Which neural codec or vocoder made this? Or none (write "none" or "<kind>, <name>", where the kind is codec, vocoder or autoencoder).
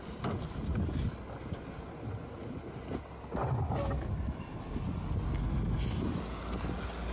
none